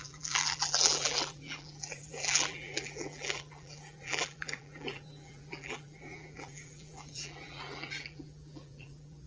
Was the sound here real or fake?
fake